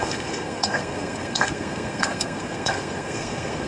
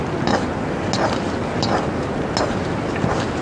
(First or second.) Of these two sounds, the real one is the second